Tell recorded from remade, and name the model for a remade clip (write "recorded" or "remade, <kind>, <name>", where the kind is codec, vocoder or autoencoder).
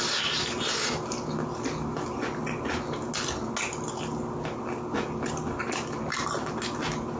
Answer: recorded